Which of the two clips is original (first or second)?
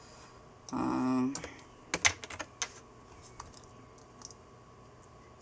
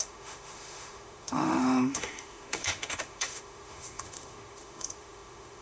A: first